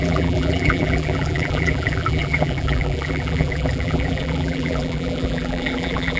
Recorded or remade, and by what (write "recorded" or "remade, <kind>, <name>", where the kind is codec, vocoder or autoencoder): remade, vocoder, BigVGAN v2